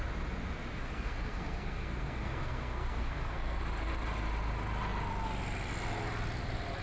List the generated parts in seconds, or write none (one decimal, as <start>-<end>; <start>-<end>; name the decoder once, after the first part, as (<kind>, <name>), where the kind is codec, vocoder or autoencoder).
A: 0.8-3.6 (codec, SNAC)

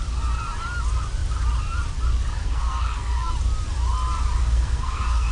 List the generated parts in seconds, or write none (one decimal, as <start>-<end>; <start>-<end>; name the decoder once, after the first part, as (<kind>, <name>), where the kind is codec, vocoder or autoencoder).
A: 2.4-3.3 (codec, SNAC); 4.4-5.3

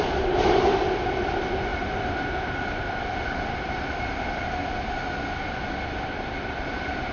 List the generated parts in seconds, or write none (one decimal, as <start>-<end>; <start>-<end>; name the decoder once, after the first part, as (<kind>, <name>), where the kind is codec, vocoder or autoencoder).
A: none

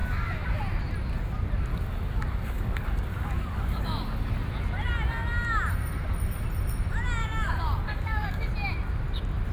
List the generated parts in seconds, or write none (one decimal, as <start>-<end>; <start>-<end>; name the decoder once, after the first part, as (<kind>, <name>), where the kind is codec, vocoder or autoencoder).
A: 0.0-0.6 (codec, DAC); 1.7-4.3; 7.2-8.5

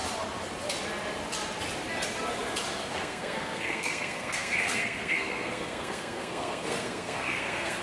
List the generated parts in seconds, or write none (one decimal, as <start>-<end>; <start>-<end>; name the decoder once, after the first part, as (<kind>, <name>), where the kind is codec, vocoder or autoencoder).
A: 2.9-7.8 (codec, SNAC)

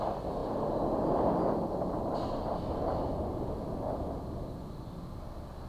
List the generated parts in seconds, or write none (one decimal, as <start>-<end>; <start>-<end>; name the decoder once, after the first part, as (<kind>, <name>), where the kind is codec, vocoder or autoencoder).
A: none

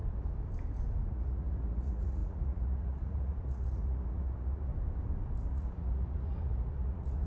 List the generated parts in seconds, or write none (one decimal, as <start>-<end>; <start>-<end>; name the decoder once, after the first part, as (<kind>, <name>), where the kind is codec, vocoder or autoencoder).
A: 1.1-4.7 (vocoder, Vocos); 5.5-7.3

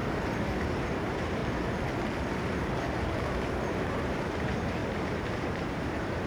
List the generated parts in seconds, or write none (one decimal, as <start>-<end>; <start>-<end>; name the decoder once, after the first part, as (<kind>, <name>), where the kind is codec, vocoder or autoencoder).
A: 0.0-1.4 (vocoder, BigVGAN v2); 2.2-4.8; 5.4-6.3